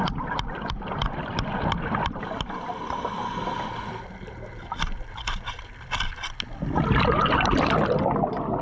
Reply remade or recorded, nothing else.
remade